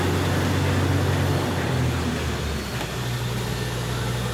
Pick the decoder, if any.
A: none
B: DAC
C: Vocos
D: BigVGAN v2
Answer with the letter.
A